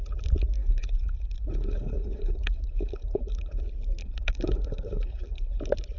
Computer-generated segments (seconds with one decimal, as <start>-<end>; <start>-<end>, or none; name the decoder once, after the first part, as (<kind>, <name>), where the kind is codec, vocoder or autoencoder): 0.6-3.6 (codec, HILCodec); 4.0-5.6